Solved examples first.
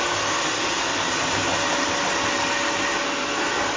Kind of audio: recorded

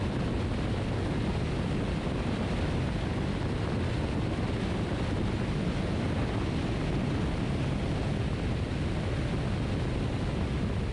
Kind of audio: recorded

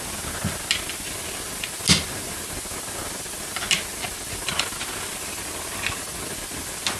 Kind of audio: recorded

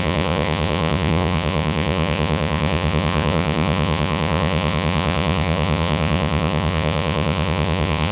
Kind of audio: remade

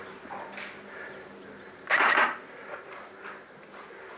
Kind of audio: recorded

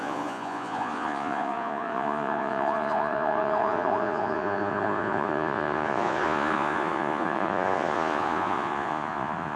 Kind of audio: remade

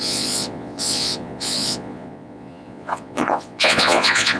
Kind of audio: remade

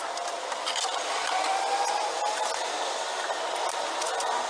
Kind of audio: recorded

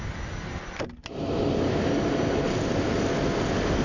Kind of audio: recorded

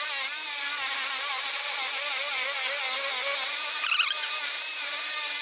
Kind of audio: recorded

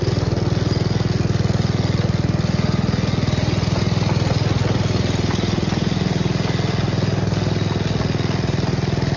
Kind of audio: recorded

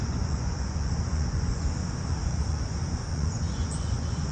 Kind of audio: remade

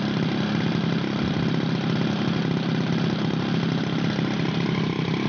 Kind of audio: recorded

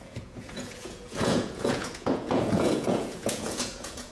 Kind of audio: remade